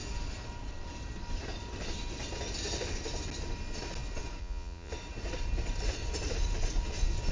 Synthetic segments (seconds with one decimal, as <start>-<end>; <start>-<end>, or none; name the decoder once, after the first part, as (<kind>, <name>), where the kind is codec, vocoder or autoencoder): 4.4-4.9 (vocoder, Vocos)